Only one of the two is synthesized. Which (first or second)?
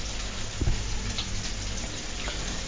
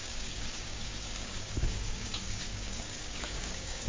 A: second